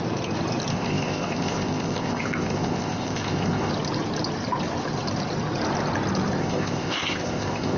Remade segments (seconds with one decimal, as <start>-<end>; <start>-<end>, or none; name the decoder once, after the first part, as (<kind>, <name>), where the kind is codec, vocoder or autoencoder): 0.7-3.7 (codec, ZipCodec); 6.4-7.8